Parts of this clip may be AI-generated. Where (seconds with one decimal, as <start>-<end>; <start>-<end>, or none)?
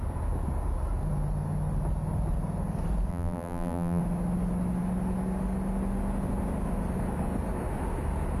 3.1-4.0